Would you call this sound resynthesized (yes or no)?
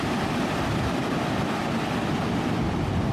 no